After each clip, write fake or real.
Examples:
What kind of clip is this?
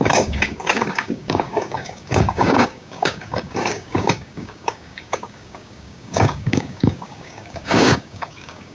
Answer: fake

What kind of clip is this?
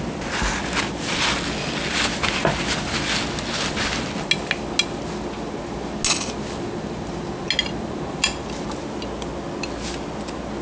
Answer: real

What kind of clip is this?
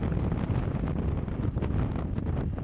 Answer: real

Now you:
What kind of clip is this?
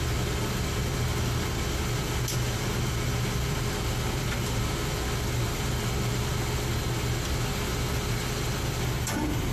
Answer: real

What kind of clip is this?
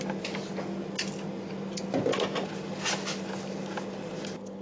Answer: real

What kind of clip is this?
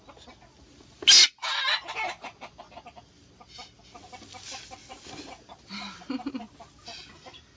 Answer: real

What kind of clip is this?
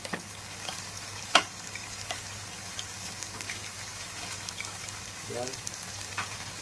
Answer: fake